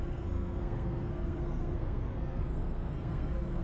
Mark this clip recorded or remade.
remade